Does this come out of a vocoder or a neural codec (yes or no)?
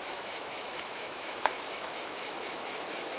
yes